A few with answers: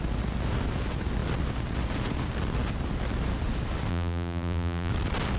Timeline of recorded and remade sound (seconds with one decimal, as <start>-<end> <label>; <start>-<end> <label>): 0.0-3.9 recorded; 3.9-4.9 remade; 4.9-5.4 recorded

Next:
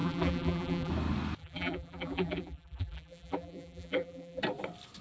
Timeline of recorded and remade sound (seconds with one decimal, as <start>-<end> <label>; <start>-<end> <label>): 0.0-0.9 remade; 0.9-1.4 recorded; 1.4-4.4 remade; 4.4-5.0 recorded

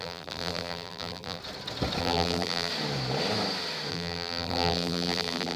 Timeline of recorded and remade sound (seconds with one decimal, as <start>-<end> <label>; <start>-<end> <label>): 0.0-1.4 remade; 1.4-2.0 recorded; 2.0-2.7 remade; 2.7-3.9 recorded; 3.9-5.6 remade

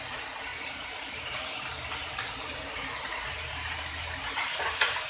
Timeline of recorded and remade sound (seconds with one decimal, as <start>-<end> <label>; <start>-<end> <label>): 0.0-0.5 remade; 0.5-3.3 recorded; 3.3-5.1 remade

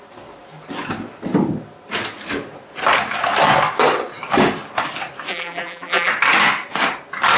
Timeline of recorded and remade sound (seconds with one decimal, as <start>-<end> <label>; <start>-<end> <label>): 0.0-5.3 recorded; 5.3-6.1 remade; 6.1-7.4 recorded

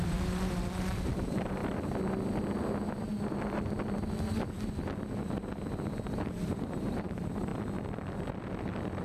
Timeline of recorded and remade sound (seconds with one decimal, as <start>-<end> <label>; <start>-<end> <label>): 0.0-1.6 remade; 1.6-6.4 recorded; 6.4-7.5 remade; 7.5-9.0 recorded

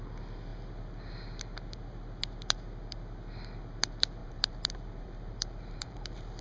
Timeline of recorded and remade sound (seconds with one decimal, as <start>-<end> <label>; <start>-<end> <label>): 0.0-4.2 recorded; 4.2-6.4 remade